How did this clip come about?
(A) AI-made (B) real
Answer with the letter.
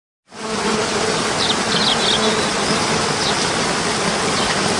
B